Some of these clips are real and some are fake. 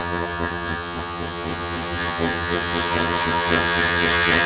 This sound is fake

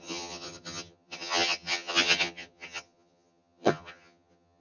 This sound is fake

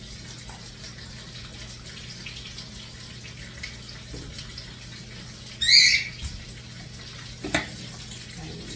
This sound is real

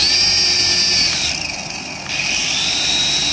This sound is real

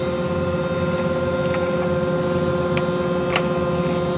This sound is real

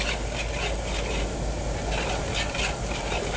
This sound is real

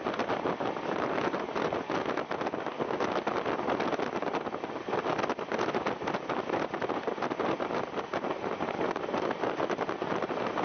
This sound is real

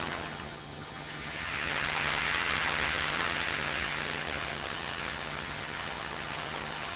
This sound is fake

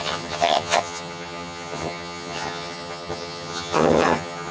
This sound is fake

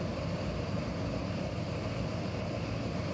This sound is real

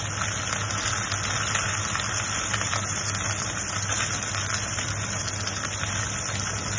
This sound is real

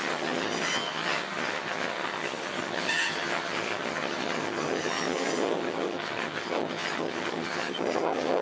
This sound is fake